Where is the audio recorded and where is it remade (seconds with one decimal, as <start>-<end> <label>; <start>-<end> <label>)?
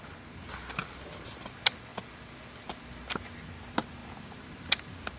0.0-0.8 recorded; 0.8-1.5 remade; 1.5-4.0 recorded; 4.0-5.2 remade